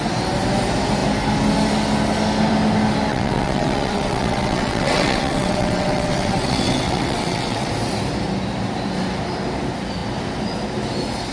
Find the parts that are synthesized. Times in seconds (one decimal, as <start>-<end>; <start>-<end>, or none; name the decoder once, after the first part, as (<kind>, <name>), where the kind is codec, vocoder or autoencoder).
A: 3.1-7.7 (vocoder, WaveNeXt)